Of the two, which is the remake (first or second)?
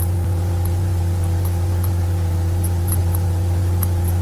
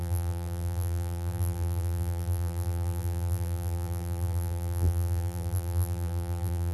second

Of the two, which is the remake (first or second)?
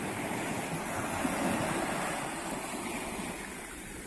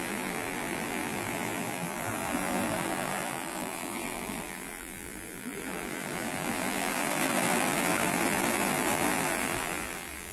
second